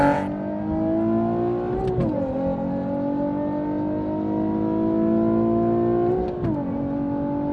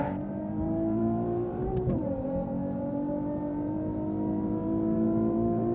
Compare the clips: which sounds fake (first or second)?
second